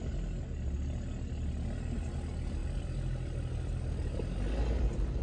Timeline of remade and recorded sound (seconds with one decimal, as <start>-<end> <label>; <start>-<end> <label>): 0.0-5.2 recorded